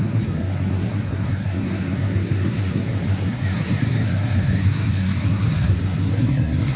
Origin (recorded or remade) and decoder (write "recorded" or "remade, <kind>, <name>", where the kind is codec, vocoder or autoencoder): remade, codec, SNAC